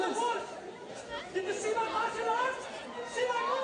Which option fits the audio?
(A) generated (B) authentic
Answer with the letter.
B